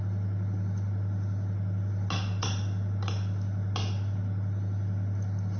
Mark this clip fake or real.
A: real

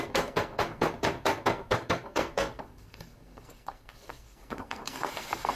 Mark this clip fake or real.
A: fake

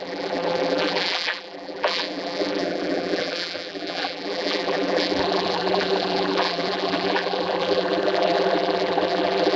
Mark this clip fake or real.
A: fake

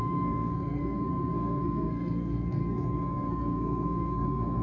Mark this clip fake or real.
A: fake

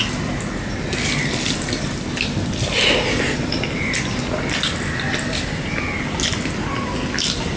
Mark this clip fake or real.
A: real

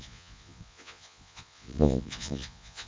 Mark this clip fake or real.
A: fake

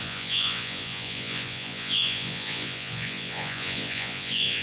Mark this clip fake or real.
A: fake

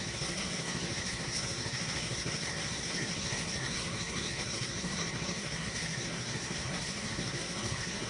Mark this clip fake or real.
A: fake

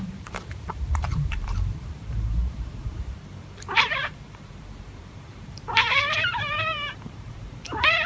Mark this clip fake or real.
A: fake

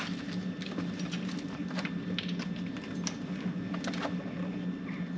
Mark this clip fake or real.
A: real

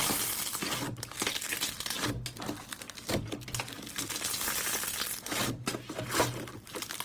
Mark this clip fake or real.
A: real